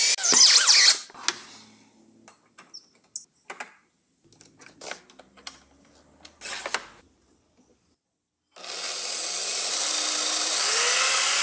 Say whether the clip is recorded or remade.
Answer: recorded